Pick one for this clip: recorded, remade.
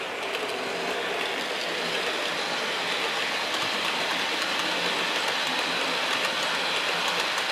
recorded